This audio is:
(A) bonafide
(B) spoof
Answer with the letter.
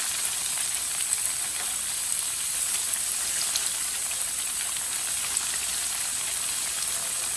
A